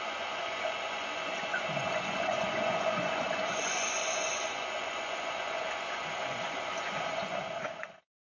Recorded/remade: remade